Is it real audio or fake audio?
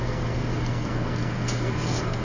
fake